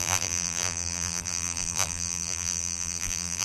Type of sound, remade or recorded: remade